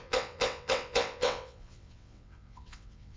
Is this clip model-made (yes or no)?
yes